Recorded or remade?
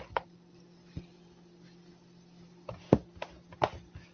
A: recorded